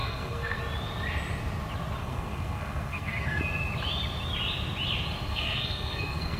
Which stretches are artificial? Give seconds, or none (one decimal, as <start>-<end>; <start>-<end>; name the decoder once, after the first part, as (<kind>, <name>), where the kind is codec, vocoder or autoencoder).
0.0-0.6 (codec, SNAC); 2.0-3.4; 5.3-6.4